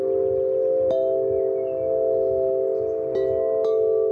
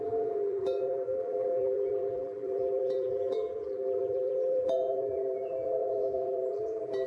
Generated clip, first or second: second